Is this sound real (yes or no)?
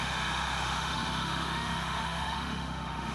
no